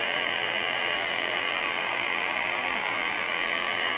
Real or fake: fake